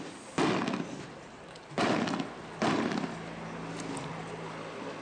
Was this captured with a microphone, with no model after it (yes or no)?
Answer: yes